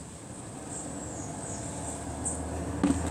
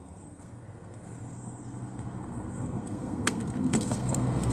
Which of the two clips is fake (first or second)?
second